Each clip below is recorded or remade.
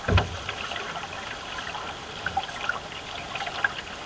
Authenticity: recorded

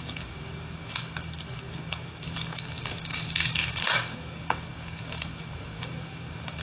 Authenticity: remade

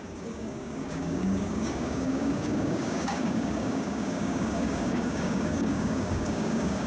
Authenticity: remade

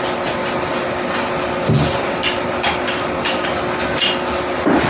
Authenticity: recorded